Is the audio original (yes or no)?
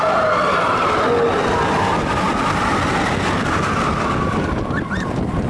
yes